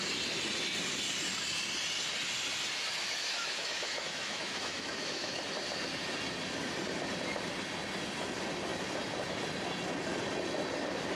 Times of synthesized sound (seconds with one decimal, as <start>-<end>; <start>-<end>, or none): 3.0-5.4